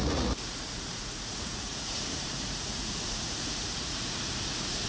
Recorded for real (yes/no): no